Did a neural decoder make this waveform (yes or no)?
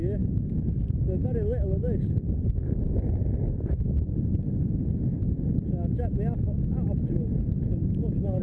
no